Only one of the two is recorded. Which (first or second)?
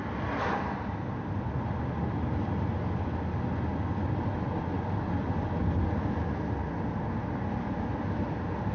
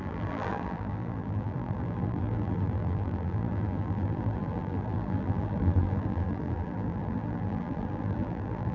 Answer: first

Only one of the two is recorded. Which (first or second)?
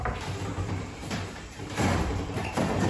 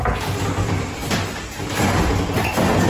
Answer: second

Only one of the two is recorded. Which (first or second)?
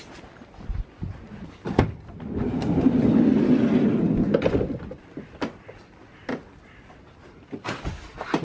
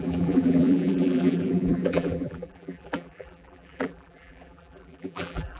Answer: first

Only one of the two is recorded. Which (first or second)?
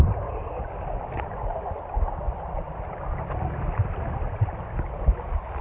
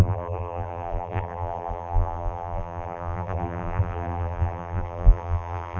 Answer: first